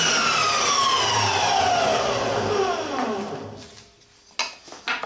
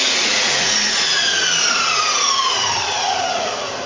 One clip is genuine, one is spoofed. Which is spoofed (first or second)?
second